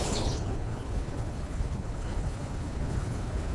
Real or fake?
fake